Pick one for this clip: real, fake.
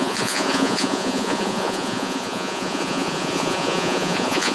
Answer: fake